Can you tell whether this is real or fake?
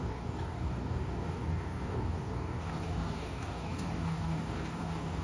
fake